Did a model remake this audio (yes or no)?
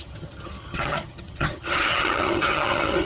yes